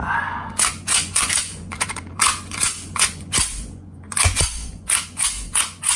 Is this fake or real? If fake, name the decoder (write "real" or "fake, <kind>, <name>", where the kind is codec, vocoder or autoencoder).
fake, vocoder, Vocos